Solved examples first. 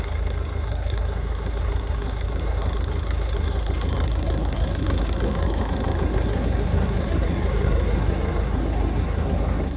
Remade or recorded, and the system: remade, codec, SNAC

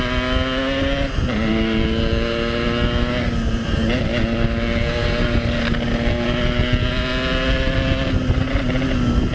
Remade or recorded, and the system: recorded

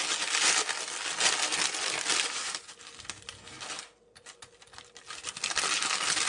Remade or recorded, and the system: recorded